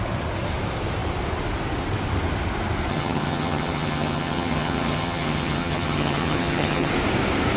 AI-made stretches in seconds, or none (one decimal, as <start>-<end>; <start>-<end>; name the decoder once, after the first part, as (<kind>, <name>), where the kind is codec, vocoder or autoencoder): 2.9-6.9 (vocoder, HiFi-GAN)